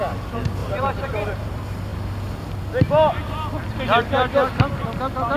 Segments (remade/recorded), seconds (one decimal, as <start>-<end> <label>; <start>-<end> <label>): 0.0-0.6 recorded; 0.6-1.5 remade; 1.5-5.4 recorded